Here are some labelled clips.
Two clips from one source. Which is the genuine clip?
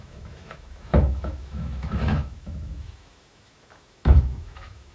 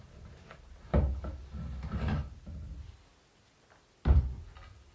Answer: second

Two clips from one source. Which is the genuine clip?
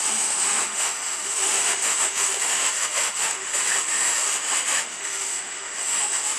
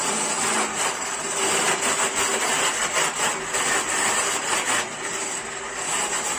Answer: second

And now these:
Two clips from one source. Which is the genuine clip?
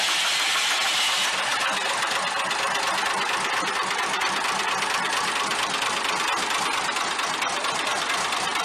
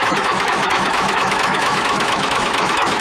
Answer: first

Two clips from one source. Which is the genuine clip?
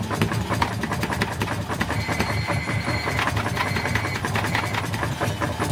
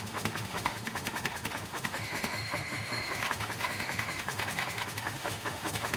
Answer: first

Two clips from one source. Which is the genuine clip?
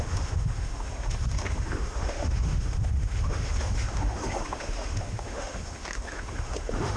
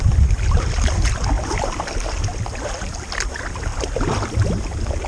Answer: second